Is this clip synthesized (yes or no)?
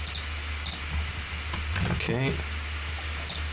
no